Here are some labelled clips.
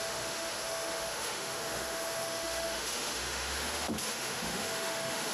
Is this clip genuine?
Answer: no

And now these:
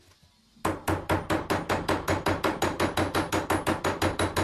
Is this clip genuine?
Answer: yes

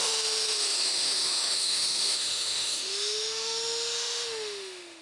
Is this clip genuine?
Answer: no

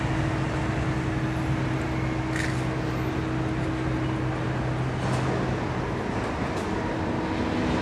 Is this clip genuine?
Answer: yes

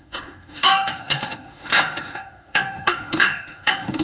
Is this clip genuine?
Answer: no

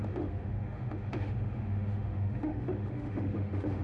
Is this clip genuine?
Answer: no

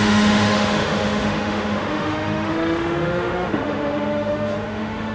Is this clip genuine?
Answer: no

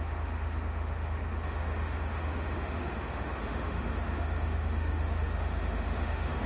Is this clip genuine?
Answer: no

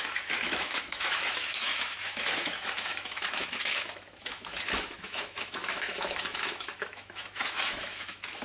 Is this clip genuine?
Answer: no